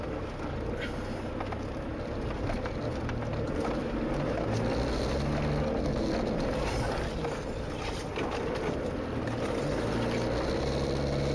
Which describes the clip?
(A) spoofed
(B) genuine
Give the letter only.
B